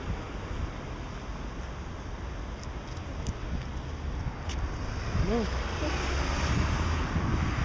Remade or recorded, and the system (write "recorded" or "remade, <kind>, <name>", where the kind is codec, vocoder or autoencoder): recorded